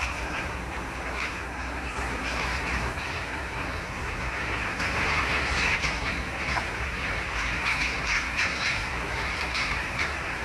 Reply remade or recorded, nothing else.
remade